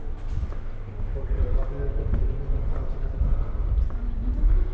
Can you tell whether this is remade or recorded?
recorded